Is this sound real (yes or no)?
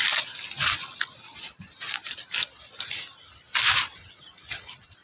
yes